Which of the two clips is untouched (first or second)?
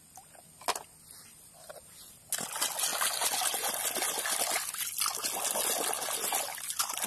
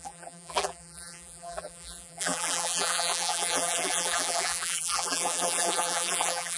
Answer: first